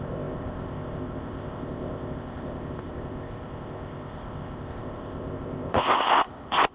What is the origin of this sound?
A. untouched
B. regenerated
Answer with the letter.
B